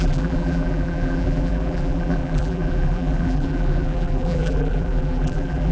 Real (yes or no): no